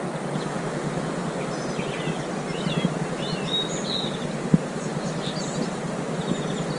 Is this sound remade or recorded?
recorded